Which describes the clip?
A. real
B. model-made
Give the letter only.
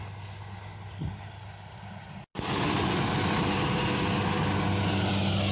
A